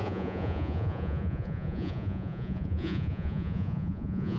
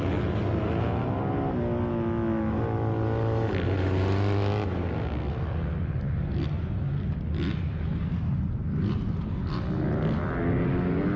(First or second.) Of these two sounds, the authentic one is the second